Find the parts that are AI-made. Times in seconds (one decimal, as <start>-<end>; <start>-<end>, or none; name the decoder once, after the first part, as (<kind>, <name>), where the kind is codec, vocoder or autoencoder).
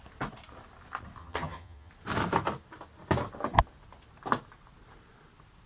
1.2-1.9 (vocoder, HiFi-GAN)